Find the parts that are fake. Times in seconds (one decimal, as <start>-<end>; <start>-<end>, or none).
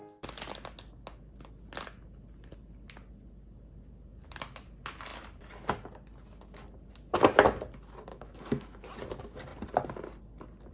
8.1-8.8